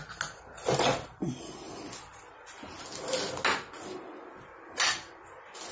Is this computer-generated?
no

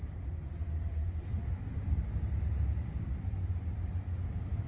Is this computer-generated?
yes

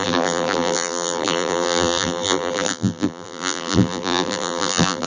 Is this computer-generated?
yes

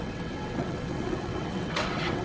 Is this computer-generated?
yes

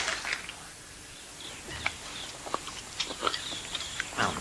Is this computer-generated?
no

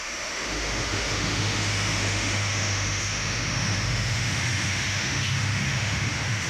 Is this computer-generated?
yes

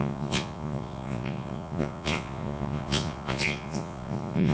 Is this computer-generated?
yes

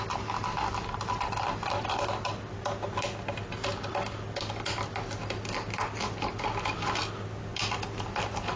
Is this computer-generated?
no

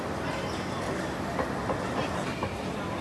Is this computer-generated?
no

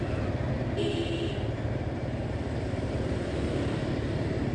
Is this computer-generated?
no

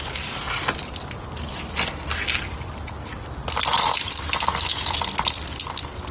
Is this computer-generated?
no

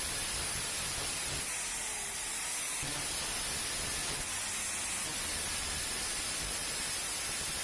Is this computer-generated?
no